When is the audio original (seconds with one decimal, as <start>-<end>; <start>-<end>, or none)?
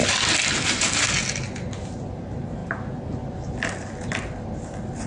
0.0-5.1